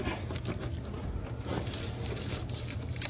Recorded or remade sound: recorded